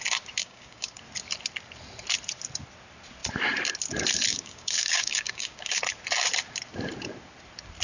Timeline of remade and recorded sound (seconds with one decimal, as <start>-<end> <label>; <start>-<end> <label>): 0.0-0.4 recorded; 0.4-1.0 remade; 1.0-4.3 recorded; 4.3-5.8 remade; 5.8-7.8 recorded